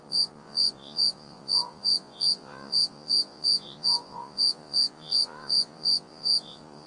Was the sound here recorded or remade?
remade